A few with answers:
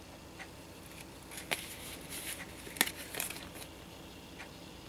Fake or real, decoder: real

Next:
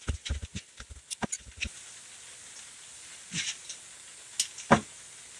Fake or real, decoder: real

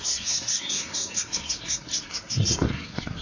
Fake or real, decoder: fake, codec, SNAC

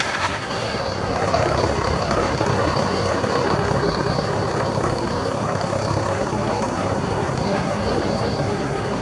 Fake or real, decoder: fake, codec, SNAC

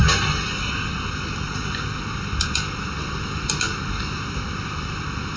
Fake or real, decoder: real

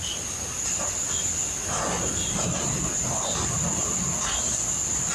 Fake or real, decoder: real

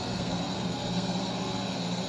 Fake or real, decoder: fake, codec, SNAC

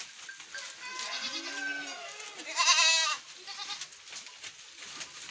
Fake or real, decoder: real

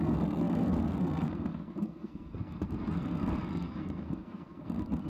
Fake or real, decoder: fake, codec, SNAC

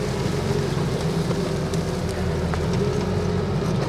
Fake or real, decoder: real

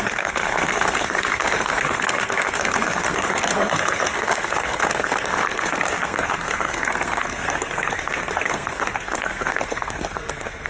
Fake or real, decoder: fake, codec, SNAC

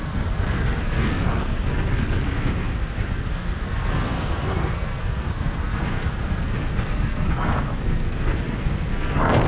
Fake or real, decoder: fake, codec, SNAC